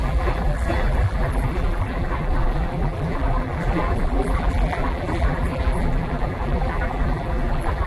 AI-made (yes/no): yes